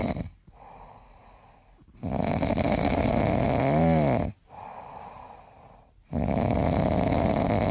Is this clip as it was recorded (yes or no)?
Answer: yes